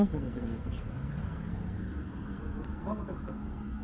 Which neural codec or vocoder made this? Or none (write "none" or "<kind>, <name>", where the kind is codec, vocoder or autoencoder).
codec, SNAC